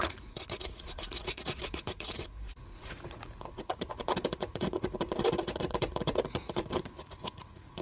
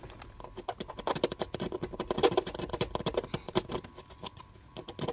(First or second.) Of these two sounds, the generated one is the first